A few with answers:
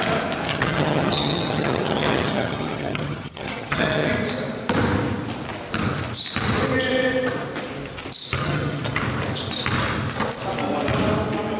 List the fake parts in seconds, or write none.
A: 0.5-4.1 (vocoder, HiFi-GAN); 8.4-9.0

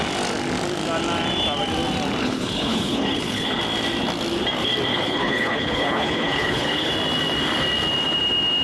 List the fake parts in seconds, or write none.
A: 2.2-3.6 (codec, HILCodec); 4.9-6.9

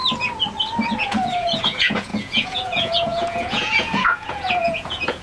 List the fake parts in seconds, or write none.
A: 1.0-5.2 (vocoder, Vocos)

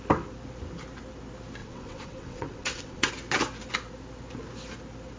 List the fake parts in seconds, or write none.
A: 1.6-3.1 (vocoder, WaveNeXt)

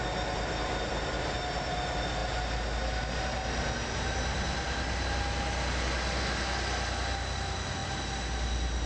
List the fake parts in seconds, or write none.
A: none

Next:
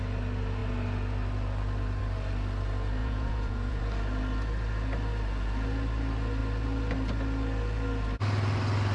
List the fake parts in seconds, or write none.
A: 3.0-3.8 (vocoder, Vocos)